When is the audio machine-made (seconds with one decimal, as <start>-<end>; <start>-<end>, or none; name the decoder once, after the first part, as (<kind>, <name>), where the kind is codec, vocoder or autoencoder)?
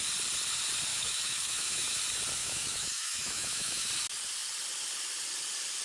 0.9-2.0 (autoencoder, DAC-VAE); 2.4-3.9